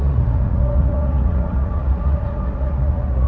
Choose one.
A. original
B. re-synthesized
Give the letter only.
B